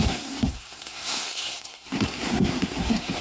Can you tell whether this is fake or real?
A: fake